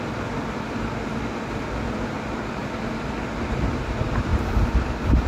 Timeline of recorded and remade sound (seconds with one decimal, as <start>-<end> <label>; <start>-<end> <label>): 0.0-2.6 remade; 2.6-3.7 recorded; 3.7-5.3 remade